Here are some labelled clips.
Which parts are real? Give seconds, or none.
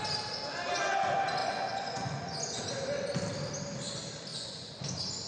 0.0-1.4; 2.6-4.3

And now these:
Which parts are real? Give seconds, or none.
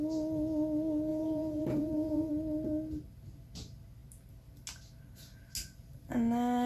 0.0-1.1; 2.3-6.7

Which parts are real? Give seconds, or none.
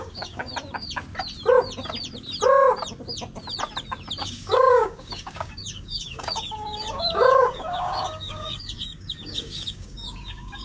0.5-4.2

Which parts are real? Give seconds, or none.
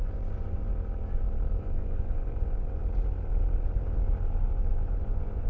0.7-1.6; 2.8-4.4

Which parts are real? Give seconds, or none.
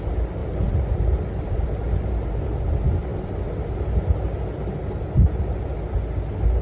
0.0-0.4; 1.0-6.6